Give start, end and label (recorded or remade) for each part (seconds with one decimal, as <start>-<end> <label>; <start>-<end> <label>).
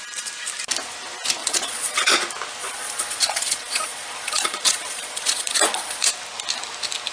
0.0-1.4 recorded; 1.4-2.1 remade; 2.1-2.6 recorded; 2.6-6.1 remade; 6.1-7.1 recorded